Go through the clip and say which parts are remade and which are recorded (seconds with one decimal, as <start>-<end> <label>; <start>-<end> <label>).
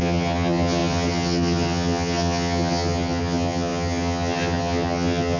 0.0-5.4 remade